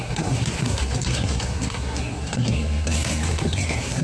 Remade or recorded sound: remade